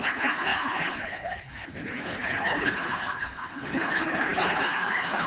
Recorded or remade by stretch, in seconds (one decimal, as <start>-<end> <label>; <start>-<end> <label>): 0.0-5.3 remade